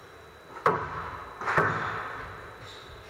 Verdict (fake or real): real